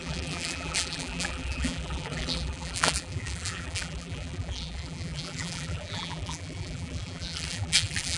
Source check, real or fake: fake